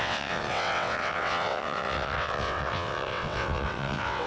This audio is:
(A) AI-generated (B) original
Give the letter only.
A